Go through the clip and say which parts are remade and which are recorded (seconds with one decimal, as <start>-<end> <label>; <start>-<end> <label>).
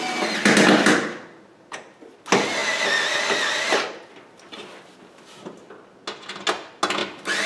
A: 0.0-7.5 recorded